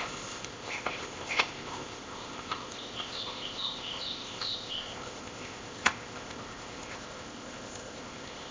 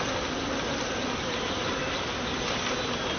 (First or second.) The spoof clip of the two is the first